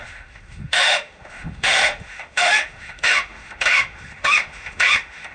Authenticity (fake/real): fake